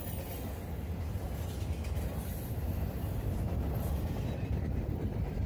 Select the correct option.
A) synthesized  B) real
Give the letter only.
B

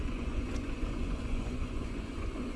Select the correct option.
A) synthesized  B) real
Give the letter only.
A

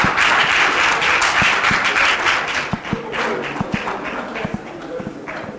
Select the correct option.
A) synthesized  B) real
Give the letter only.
B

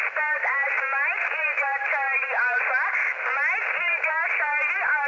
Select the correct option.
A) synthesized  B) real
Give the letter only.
B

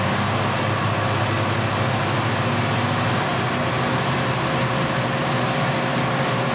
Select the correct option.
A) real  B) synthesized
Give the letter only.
A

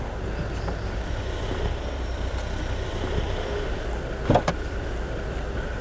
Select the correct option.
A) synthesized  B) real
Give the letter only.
A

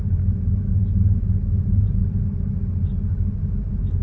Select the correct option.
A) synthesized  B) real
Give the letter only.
B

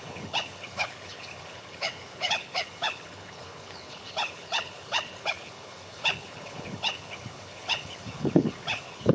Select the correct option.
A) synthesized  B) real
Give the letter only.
A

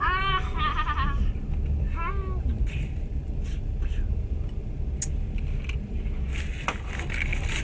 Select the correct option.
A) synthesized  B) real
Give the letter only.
B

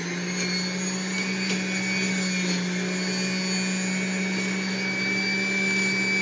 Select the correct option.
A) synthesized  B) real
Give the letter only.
B